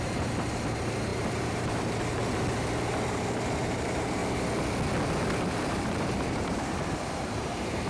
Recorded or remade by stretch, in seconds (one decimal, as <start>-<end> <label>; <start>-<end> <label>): 0.0-2.2 remade; 2.2-3.1 recorded; 3.1-4.2 remade; 4.2-5.4 recorded; 5.4-7.9 remade

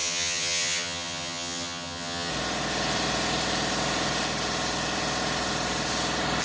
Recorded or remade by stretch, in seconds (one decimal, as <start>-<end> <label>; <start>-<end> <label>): 0.0-2.3 remade; 2.3-6.4 recorded

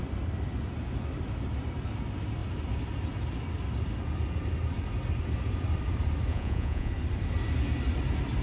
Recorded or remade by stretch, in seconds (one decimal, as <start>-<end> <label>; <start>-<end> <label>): 0.0-6.3 recorded; 6.3-6.9 remade; 6.9-8.4 recorded